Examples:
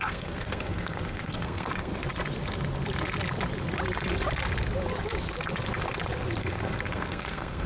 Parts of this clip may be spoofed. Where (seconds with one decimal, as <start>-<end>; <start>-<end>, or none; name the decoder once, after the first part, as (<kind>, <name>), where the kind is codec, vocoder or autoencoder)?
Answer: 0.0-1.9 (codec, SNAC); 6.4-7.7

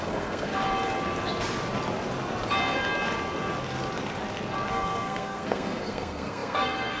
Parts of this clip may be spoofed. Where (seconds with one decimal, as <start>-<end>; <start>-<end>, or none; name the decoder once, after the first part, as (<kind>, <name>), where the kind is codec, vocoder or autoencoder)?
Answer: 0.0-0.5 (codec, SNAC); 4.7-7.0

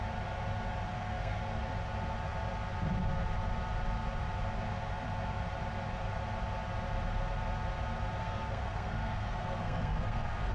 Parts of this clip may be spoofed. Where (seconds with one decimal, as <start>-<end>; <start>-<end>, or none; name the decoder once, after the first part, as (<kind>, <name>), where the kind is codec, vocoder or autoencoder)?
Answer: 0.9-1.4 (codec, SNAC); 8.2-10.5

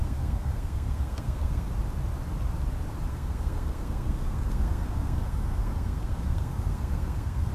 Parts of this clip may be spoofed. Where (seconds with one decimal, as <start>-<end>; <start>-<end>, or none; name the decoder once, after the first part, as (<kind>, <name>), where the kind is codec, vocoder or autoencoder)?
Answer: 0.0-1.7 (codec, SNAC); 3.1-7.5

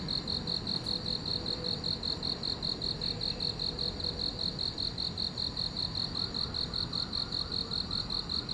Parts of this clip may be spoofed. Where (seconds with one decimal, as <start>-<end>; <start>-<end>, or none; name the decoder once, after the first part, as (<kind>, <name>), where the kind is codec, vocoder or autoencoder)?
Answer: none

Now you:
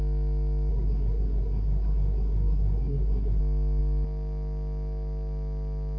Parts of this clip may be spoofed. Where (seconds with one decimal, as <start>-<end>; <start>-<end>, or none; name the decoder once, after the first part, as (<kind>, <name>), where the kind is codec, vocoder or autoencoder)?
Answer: 0.7-3.4 (codec, SNAC)